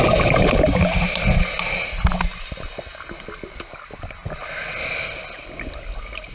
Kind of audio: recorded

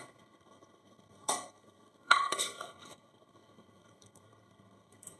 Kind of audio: remade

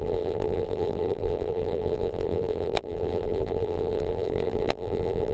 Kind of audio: remade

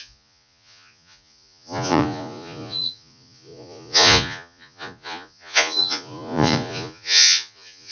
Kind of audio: remade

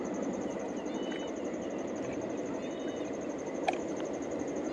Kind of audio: recorded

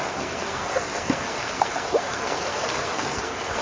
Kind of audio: remade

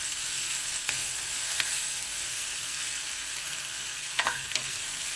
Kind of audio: remade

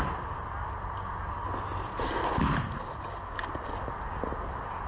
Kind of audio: recorded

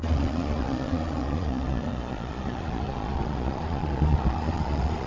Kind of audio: remade